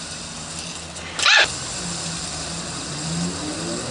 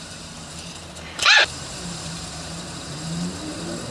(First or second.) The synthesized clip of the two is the second